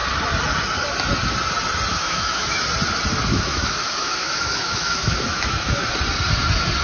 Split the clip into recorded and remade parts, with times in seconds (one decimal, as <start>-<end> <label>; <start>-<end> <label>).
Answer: 0.0-1.9 recorded; 1.9-2.6 remade; 2.6-3.3 recorded; 3.3-5.9 remade; 5.9-6.8 recorded